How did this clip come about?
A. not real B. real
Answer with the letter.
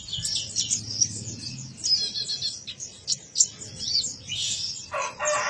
B